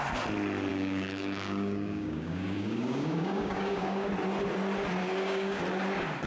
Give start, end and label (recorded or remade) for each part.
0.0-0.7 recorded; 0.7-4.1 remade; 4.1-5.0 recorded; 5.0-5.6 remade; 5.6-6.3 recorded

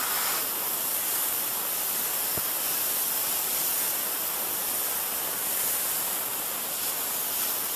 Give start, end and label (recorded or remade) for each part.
0.0-7.8 recorded

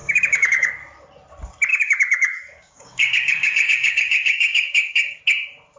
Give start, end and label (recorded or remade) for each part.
0.0-0.7 remade; 0.7-1.7 recorded; 1.7-5.2 remade; 5.2-5.8 recorded